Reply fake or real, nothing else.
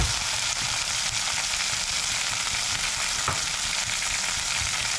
real